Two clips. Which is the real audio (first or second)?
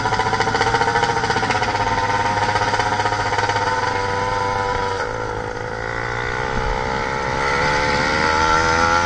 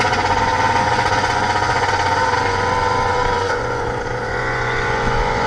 first